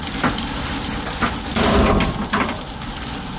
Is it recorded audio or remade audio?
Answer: remade